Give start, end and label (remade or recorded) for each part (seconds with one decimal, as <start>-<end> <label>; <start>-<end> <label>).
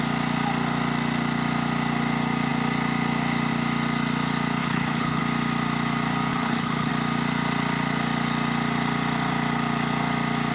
0.0-4.6 recorded; 4.6-5.2 remade; 5.2-6.3 recorded; 6.3-6.9 remade; 6.9-10.5 recorded